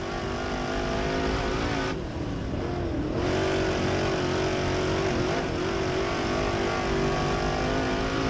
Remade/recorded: recorded